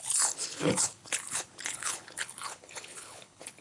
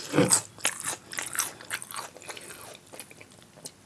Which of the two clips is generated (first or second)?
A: first